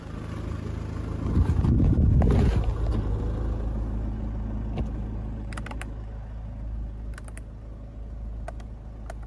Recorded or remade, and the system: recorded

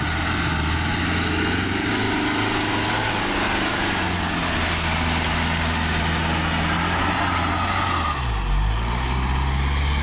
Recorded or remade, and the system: recorded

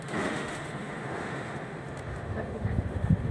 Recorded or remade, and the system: remade, autoencoder, DAC-VAE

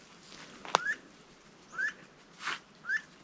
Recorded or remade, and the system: recorded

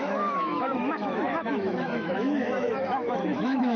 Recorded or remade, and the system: remade, autoencoder, DAC-VAE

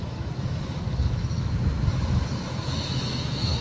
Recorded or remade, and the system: remade, autoencoder, DAC-VAE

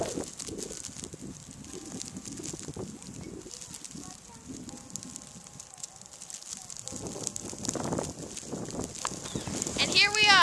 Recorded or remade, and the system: recorded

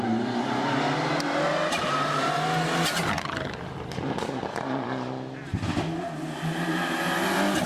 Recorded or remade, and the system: recorded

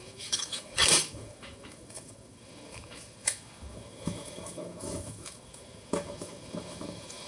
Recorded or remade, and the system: remade, autoencoder, DAC-VAE